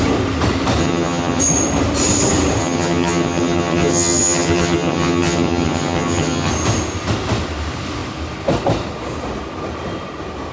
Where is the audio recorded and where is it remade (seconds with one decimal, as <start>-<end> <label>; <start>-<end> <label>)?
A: 0.0-0.8 recorded; 0.8-1.4 remade; 1.4-2.6 recorded; 2.6-6.5 remade; 6.5-10.5 recorded